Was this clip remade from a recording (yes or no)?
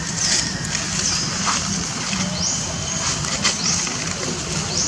no